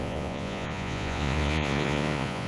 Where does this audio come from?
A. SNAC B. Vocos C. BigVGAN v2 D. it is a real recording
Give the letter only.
B